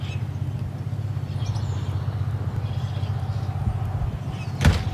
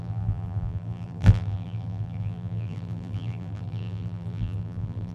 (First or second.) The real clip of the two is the first